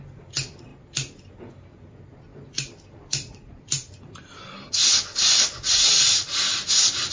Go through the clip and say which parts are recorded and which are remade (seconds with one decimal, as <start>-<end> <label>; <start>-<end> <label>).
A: 0.0-2.3 recorded; 2.3-4.0 remade; 4.0-7.1 recorded